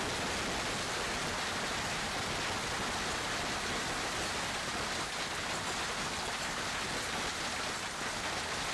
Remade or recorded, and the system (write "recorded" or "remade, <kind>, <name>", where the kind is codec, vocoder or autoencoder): recorded